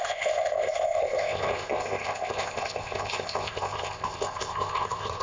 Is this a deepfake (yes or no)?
yes